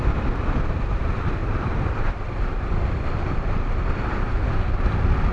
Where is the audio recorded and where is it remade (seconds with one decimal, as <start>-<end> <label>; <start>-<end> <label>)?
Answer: 0.0-1.4 recorded; 1.4-4.6 remade; 4.6-5.3 recorded